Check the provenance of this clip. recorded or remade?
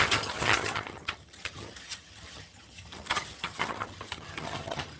remade